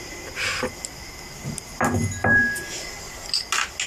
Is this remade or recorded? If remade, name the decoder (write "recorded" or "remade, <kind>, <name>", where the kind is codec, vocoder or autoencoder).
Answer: recorded